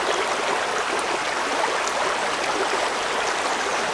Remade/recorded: recorded